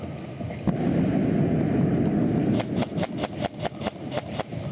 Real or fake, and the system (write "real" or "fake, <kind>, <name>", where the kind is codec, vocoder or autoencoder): real